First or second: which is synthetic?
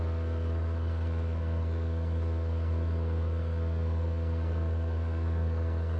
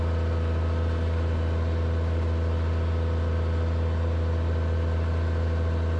first